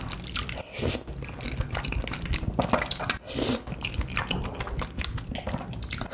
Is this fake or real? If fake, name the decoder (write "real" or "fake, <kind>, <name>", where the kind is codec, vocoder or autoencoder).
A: real